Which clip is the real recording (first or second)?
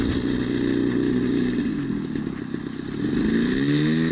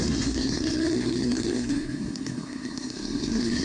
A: first